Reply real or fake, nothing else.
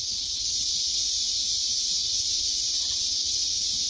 real